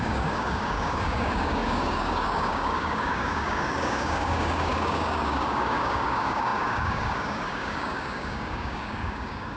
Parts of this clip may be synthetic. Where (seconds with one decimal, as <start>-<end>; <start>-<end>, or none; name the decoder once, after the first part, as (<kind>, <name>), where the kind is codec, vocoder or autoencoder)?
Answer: 0.0-9.6 (codec, DAC)